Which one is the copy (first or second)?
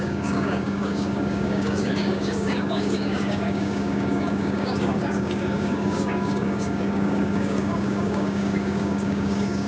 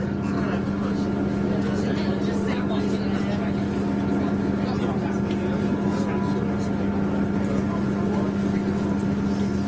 first